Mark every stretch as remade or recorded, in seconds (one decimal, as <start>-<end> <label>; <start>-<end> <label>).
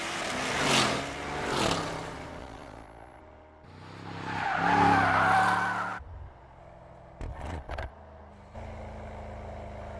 0.0-2.4 recorded; 2.4-3.2 remade; 3.2-7.3 recorded; 7.3-7.9 remade; 7.9-10.0 recorded